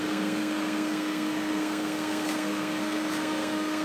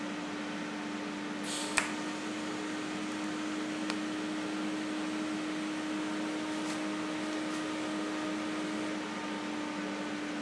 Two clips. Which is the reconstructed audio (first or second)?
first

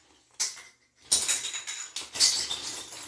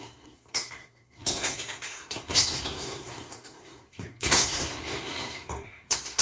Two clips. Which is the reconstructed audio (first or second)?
second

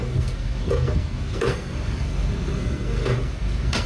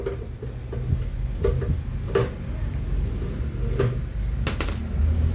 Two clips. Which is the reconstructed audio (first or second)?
first